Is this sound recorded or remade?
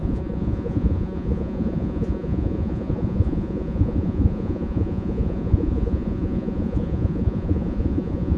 remade